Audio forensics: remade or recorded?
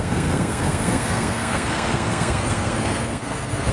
remade